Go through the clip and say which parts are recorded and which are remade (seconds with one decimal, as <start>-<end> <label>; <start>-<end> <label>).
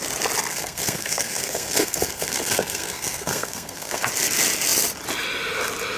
0.0-0.5 recorded; 0.5-4.1 remade; 4.1-6.0 recorded